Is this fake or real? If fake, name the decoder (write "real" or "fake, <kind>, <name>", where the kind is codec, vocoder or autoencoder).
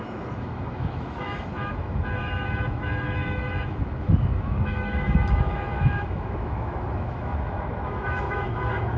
fake, autoencoder, DAC-VAE